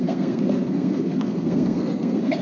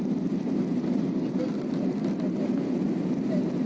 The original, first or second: second